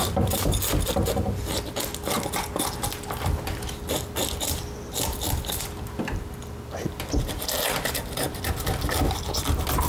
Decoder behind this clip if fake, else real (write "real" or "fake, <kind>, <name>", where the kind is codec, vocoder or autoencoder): real